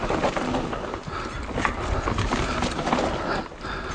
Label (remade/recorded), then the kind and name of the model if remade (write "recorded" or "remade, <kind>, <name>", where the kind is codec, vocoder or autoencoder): recorded